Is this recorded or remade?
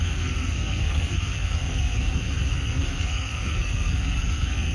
remade